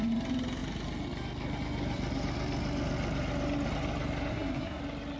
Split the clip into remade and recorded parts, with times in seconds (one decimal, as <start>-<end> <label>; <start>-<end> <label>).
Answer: 0.0-4.3 recorded; 4.3-4.8 remade; 4.8-5.2 recorded